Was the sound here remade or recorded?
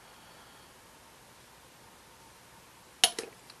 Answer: recorded